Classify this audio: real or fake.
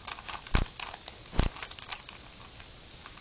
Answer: real